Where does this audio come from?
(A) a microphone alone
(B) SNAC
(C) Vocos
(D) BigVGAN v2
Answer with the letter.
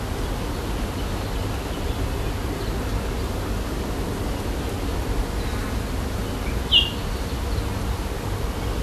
A